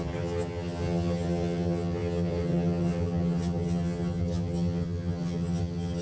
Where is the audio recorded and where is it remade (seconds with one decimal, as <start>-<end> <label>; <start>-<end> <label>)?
0.0-6.0 remade